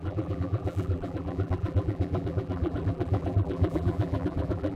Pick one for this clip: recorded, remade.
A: remade